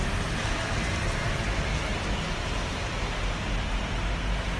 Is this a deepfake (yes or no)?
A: no